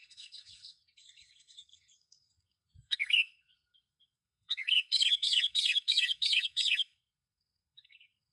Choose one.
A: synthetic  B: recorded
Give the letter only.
A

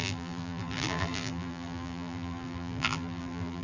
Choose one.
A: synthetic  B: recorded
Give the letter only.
A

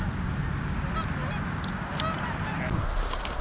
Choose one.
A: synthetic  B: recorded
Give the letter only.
B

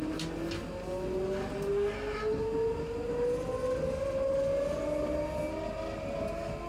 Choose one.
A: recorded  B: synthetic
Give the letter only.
A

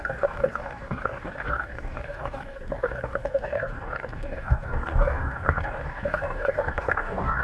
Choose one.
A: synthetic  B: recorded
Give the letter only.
A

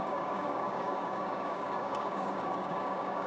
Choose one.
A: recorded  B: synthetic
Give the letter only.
B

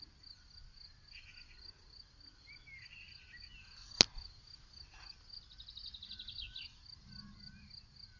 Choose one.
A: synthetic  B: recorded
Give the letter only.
B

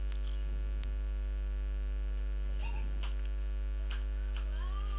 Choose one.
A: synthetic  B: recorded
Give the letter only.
B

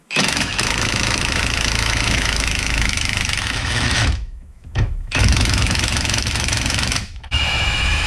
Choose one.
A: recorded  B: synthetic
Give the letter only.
B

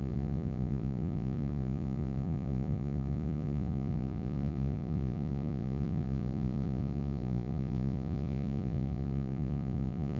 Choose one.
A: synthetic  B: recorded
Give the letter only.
A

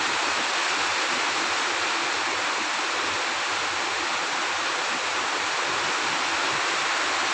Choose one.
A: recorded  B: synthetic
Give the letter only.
A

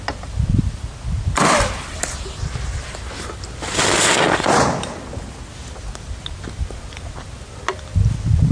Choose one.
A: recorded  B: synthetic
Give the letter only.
A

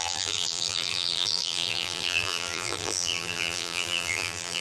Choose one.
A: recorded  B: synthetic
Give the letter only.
B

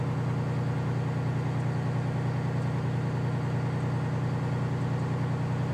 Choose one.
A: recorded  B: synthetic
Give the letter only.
A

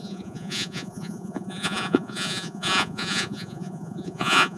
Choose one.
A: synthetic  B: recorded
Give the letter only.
A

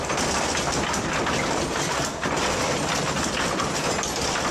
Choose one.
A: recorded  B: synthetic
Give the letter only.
A